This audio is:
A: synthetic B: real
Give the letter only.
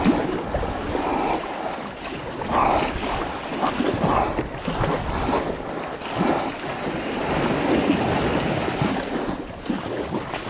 B